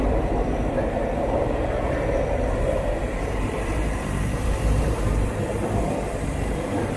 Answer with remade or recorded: remade